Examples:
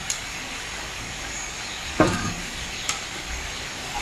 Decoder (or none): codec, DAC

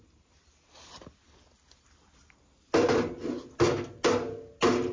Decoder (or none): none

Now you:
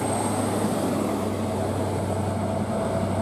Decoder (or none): none